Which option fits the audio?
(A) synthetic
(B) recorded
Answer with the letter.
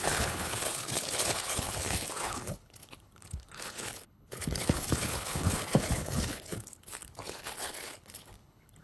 A